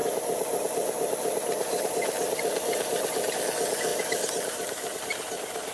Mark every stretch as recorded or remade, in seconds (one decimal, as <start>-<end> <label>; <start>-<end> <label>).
0.0-3.4 remade; 3.4-3.9 recorded; 3.9-5.7 remade